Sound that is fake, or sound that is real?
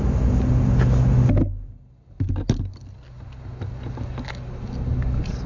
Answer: real